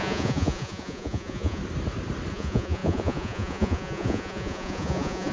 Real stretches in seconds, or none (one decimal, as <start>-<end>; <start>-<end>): 1.6-2.3